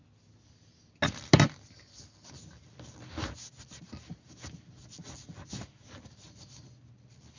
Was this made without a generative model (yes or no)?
yes